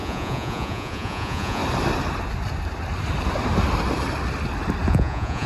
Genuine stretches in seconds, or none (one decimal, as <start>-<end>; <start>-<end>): 1.6-4.9